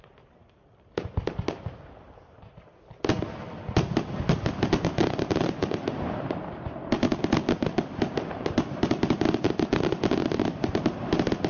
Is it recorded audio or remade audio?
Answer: recorded